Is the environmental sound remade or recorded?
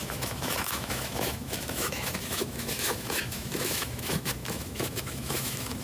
remade